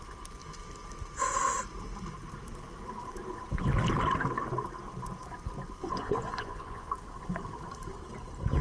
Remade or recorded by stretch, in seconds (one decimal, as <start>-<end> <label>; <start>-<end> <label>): 0.0-5.8 recorded; 5.8-6.9 remade; 6.9-8.6 recorded